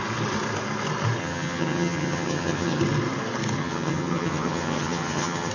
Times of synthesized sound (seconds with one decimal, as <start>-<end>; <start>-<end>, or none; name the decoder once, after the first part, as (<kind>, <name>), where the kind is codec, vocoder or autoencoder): 1.2-2.8 (vocoder, HiFi-GAN); 3.6-5.5